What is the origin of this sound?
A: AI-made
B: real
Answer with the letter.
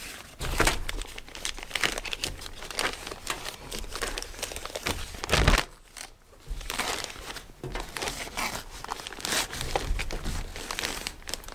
B